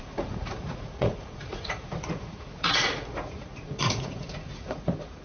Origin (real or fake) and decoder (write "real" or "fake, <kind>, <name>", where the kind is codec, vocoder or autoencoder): fake, vocoder, Vocos